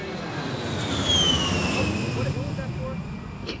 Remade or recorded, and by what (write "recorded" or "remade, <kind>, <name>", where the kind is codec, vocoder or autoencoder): recorded